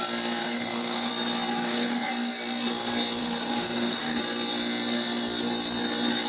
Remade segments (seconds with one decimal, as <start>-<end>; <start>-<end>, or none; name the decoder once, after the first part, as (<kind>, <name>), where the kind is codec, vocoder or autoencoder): 0.4-1.1 (codec, SNAC); 1.5-2.1; 3.2-4.2